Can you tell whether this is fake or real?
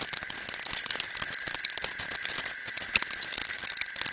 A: real